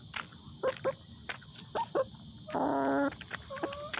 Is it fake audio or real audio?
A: real